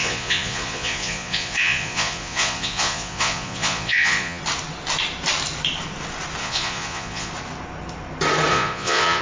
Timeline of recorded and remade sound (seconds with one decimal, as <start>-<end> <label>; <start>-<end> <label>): 0.0-4.4 remade; 4.4-6.4 recorded; 6.4-7.3 remade; 7.3-8.5 recorded; 8.5-9.2 remade